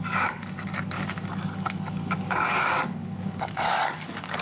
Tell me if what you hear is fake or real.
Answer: fake